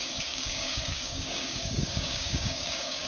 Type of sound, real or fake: fake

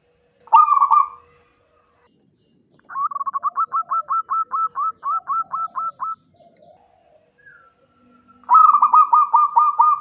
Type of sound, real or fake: real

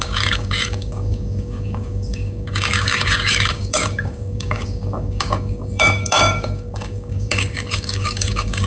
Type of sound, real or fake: fake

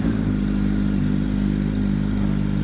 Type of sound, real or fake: real